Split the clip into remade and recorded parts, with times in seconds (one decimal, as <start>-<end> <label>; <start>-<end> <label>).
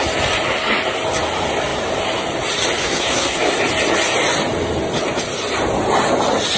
0.0-2.8 recorded; 2.8-3.6 remade; 3.6-6.6 recorded